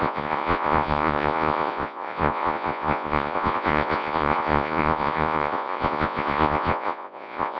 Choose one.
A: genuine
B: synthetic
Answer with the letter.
B